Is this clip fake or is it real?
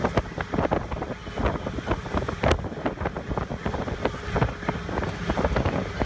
real